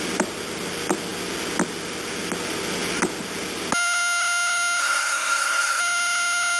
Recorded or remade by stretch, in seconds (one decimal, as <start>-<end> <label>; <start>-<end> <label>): 0.0-4.8 recorded; 4.8-5.8 remade; 5.8-6.6 recorded